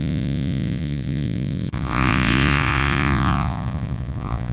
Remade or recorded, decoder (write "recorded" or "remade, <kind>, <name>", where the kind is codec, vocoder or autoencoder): remade, vocoder, Vocos